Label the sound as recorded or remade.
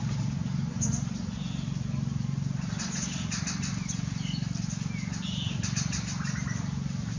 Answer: recorded